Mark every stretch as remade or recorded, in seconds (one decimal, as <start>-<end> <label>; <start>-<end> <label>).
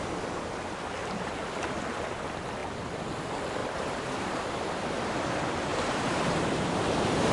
0.0-1.0 recorded; 1.0-1.5 remade; 1.5-3.6 recorded; 3.6-4.4 remade; 4.4-5.7 recorded; 5.7-7.3 remade